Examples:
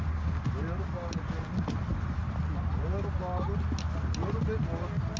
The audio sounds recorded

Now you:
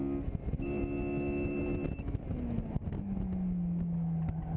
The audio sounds recorded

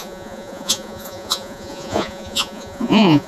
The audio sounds remade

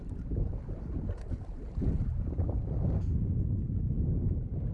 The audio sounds recorded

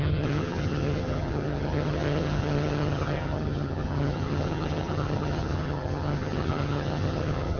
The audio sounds remade